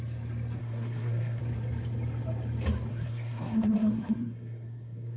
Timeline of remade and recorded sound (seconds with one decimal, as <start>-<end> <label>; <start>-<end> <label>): 0.0-0.6 recorded; 0.6-1.4 remade; 1.4-2.9 recorded; 2.9-5.2 remade